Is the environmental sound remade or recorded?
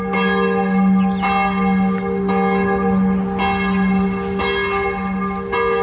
recorded